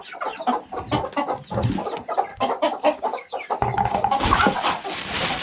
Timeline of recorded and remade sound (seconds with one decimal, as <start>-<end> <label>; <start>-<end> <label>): 0.0-2.3 recorded; 2.3-4.4 remade; 4.4-5.4 recorded